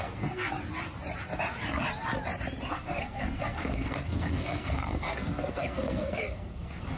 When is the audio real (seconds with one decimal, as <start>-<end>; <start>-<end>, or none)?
0.5-2.7